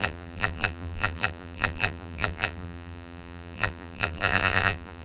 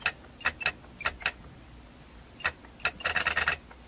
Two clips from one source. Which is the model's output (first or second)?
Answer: first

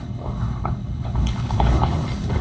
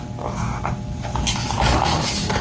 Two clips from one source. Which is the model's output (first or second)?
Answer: first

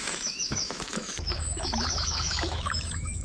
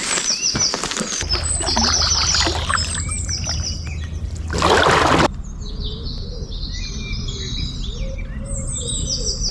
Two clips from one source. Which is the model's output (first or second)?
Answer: first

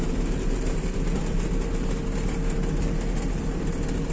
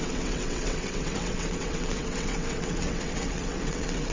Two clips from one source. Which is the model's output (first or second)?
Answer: second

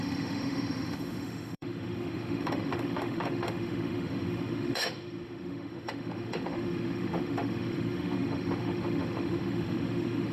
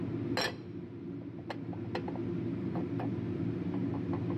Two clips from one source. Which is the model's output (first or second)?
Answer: first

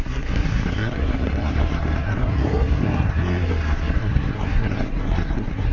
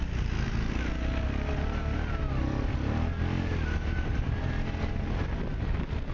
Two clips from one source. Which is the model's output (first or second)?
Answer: first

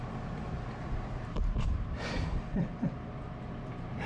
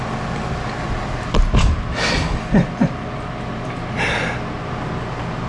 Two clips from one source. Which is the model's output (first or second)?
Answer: first